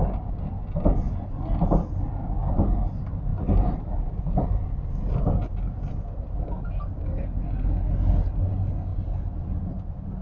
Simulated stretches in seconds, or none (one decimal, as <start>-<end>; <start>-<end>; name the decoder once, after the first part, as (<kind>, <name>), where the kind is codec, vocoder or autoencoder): none